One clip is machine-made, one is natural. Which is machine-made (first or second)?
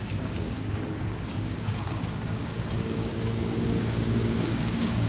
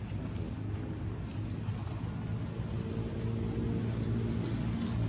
first